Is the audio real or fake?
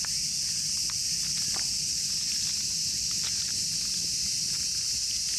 real